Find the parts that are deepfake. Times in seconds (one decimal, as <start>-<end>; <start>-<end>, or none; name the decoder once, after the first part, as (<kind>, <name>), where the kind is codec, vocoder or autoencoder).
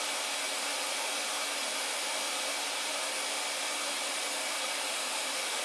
4.9-5.6 (autoencoder, DAC-VAE)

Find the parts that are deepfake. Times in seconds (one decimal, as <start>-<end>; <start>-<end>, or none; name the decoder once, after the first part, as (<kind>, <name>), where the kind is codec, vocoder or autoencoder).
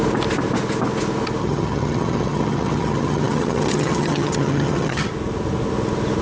1.4-5.1 (vocoder, HiFi-GAN)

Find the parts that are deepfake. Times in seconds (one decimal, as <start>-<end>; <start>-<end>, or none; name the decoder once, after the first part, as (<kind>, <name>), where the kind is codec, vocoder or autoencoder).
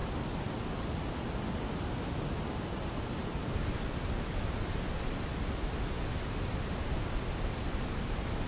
none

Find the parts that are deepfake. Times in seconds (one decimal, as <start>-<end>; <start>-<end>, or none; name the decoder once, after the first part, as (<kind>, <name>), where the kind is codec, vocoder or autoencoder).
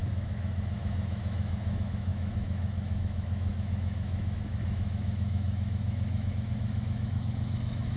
0.0-8.0 (autoencoder, DAC-VAE)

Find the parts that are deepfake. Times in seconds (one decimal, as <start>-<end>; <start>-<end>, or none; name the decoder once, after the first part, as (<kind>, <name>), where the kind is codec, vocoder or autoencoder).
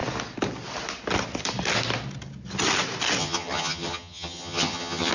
3.2-5.1 (vocoder, HiFi-GAN)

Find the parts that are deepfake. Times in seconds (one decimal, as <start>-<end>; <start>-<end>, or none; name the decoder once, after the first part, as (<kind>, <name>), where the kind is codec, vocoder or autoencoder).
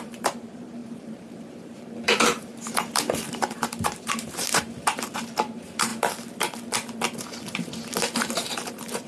0.0-5.9 (vocoder, BigVGAN v2); 7.5-9.1